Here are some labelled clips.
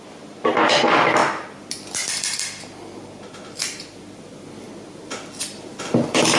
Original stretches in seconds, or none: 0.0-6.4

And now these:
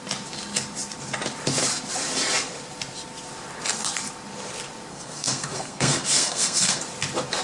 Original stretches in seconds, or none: 0.0-4.9; 6.8-7.4

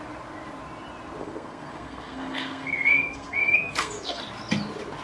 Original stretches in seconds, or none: 0.0-1.2; 4.2-5.0

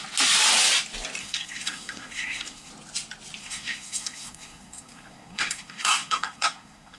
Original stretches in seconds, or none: 0.0-1.2; 2.7-3.4

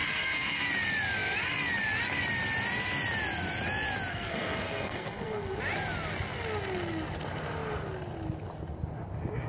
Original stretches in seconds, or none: 0.6-4.1; 5.6-9.5

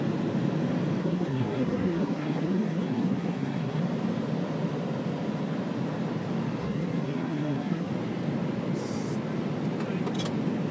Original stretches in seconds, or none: 0.0-1.0; 3.8-6.6; 7.9-10.7